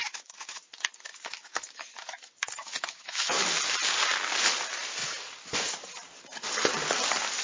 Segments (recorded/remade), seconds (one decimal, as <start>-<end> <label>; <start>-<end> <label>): 0.0-0.6 remade; 0.6-1.1 recorded; 1.1-2.2 remade; 2.2-2.6 recorded; 2.6-3.4 remade; 3.4-7.4 recorded